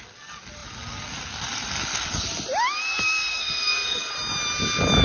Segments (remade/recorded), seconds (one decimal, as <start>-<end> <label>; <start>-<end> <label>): 0.0-3.3 recorded; 3.3-4.1 remade; 4.1-5.0 recorded